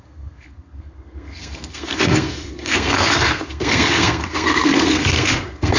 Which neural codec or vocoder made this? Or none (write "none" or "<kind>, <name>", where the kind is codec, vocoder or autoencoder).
codec, SNAC